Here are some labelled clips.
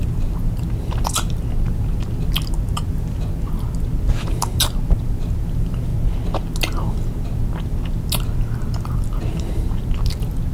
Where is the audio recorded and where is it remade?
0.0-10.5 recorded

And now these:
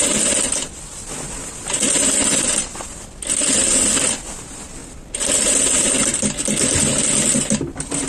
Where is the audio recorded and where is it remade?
0.0-8.1 recorded

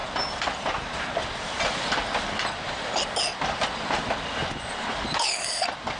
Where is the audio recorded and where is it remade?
0.0-4.4 recorded; 4.4-4.9 remade; 4.9-6.0 recorded

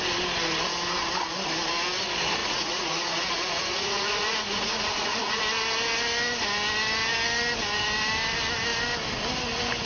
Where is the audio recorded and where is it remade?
0.0-2.4 recorded; 2.4-5.4 remade; 5.4-9.9 recorded